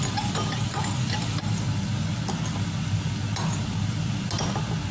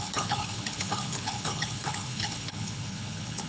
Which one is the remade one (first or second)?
second